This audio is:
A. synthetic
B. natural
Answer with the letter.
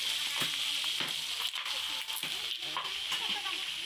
B